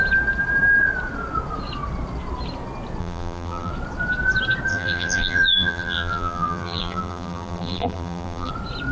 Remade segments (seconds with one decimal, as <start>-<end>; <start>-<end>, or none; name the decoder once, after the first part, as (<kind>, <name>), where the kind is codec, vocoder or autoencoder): 3.0-3.7 (vocoder, BigVGAN v2); 4.7-8.5